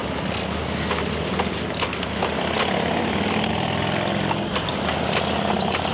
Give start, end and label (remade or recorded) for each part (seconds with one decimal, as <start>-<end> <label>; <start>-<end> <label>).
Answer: 0.0-5.9 recorded